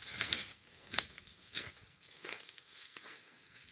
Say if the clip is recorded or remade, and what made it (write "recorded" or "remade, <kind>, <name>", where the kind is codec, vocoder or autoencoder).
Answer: remade, codec, SNAC